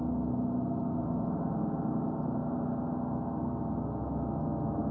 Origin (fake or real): real